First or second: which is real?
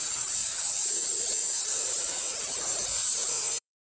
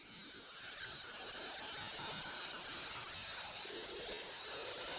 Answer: second